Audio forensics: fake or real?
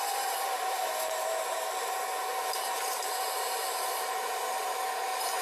fake